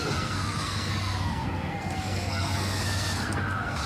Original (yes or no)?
no